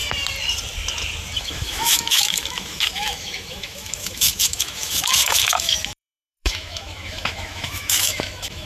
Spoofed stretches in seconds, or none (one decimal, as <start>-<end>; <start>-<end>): 1.4-8.7